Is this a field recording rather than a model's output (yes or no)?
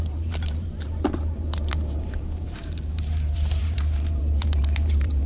no